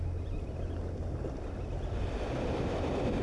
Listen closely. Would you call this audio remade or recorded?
recorded